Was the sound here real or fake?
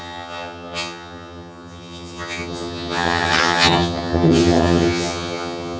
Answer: fake